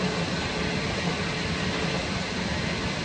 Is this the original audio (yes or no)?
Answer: yes